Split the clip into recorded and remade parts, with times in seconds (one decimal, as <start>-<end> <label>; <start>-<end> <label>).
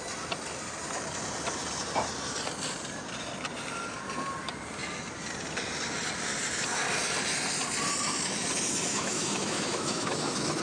0.0-8.9 recorded; 8.9-10.6 remade